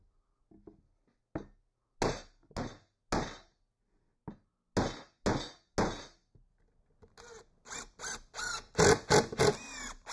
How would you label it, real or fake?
real